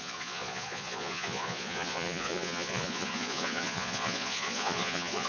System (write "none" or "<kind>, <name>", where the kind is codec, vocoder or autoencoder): vocoder, Vocos